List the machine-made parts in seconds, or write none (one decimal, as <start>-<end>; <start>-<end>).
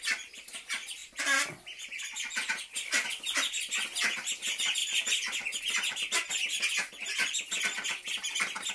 none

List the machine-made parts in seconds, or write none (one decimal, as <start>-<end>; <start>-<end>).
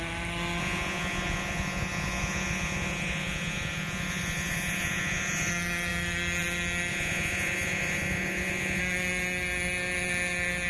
0.6-5.5; 6.9-8.8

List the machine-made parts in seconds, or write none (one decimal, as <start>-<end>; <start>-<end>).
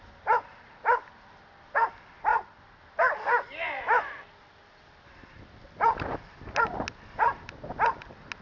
none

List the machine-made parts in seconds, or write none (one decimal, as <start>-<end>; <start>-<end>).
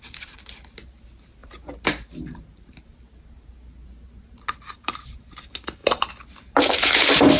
0.0-5.8; 6.6-7.4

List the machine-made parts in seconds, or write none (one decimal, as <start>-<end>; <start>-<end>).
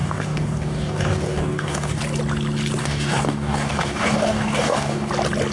0.0-2.0; 2.8-5.1